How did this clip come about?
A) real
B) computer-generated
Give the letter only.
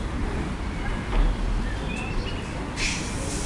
A